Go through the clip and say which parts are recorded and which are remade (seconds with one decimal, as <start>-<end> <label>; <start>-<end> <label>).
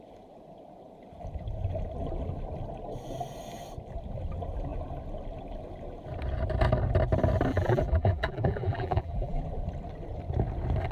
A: 0.0-7.5 recorded; 7.5-9.4 remade; 9.4-10.9 recorded